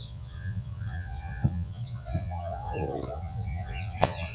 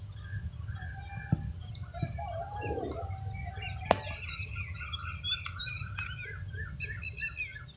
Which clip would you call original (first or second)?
second